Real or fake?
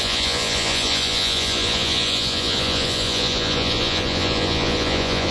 fake